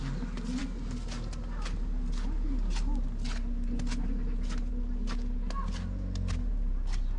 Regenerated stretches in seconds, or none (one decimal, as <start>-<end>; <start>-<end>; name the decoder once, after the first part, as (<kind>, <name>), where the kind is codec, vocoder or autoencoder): none